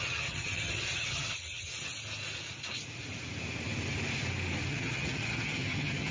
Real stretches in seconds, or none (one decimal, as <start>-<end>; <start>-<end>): 1.7-4.7